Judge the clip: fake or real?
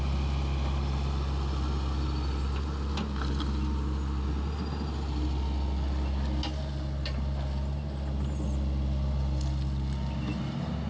real